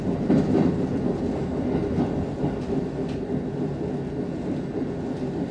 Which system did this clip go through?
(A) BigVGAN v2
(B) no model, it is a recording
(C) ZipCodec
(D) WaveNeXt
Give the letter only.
B